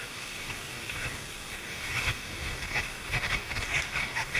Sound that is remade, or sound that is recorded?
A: remade